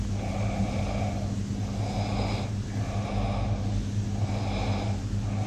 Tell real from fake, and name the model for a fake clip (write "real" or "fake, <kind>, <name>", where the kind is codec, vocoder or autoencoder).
real